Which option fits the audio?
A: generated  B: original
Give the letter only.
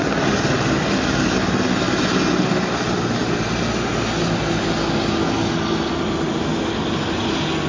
B